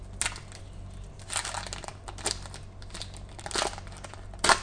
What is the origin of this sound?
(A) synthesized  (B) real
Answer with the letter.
B